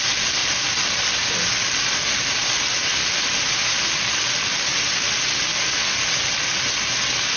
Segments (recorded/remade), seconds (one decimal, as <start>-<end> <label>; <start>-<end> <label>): 0.0-7.4 recorded

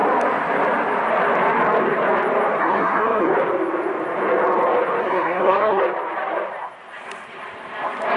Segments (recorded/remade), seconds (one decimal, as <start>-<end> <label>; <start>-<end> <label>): 0.0-2.6 recorded; 2.6-3.3 remade; 3.3-5.0 recorded; 5.0-5.8 remade; 5.8-8.2 recorded

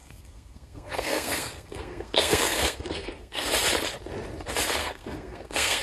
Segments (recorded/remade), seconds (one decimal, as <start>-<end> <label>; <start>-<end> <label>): 0.0-3.5 remade; 3.5-4.8 recorded; 4.8-5.8 remade

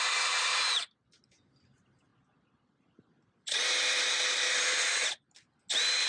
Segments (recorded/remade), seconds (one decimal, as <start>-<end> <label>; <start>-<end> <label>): 0.0-6.1 recorded

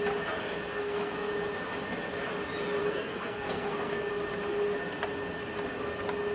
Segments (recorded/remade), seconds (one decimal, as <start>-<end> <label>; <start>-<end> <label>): 0.0-0.7 recorded; 0.7-1.3 remade; 1.3-2.8 recorded; 2.8-4.1 remade; 4.1-6.3 recorded

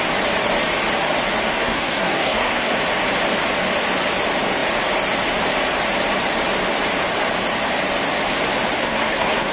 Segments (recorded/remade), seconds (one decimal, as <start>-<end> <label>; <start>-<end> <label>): 0.0-1.5 recorded; 1.5-2.8 remade; 2.8-8.8 recorded; 8.8-9.5 remade

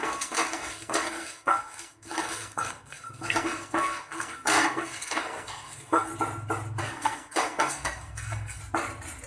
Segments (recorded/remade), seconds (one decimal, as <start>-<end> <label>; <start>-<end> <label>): 0.0-6.1 remade; 6.1-6.8 recorded; 6.8-8.6 remade; 8.6-9.3 recorded